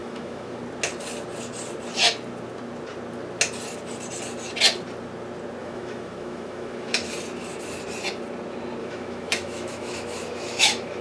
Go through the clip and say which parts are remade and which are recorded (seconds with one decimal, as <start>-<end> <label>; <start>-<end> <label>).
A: 0.0-0.6 remade; 0.6-5.6 recorded; 5.6-7.1 remade; 7.1-8.8 recorded; 8.8-11.0 remade